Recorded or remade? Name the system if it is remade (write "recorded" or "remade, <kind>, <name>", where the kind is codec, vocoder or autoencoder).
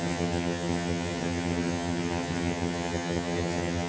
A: remade, vocoder, HiFi-GAN